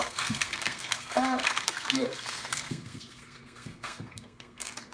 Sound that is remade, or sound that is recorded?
remade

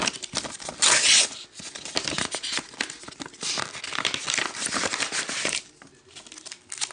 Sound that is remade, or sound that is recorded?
recorded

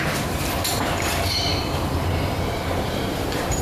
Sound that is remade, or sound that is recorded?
remade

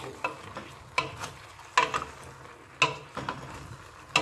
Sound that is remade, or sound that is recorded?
recorded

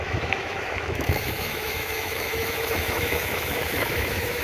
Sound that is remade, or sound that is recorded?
remade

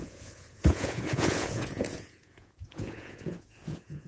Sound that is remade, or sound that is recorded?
remade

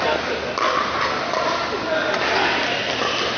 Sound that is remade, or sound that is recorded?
recorded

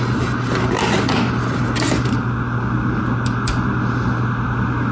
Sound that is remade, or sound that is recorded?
recorded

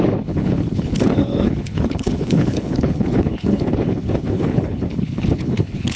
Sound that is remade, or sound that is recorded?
remade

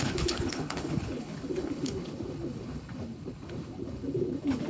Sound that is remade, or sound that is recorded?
remade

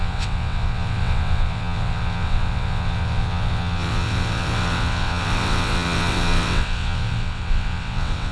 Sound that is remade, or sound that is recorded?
remade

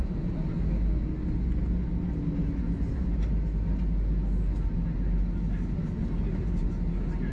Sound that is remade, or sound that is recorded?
recorded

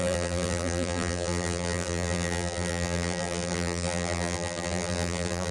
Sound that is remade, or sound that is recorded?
remade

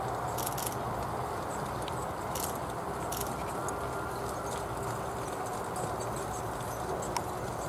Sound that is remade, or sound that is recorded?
recorded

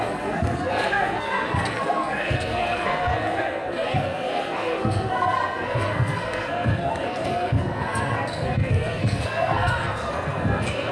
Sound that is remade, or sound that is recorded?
remade